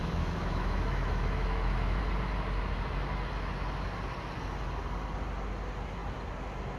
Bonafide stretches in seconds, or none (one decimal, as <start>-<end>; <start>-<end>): 2.0-6.8